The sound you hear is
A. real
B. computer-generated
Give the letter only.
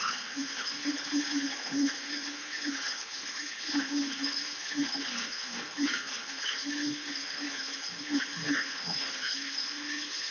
B